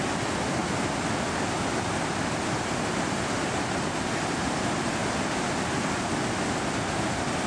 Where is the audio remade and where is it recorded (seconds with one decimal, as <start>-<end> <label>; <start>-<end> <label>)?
0.0-7.5 recorded